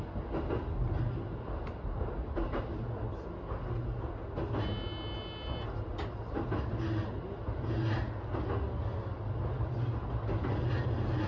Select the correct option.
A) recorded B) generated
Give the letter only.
A